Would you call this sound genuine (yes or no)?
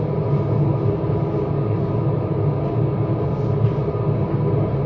yes